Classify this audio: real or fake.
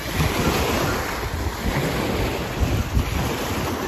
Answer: real